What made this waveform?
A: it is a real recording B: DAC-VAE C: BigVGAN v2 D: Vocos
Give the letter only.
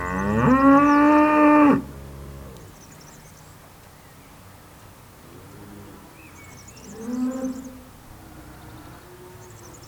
A